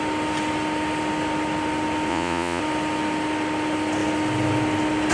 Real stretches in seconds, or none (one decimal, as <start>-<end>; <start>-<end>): 0.0-2.1; 2.6-5.1